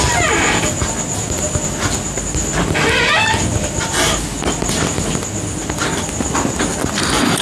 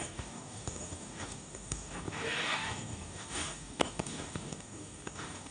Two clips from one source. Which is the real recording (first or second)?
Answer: first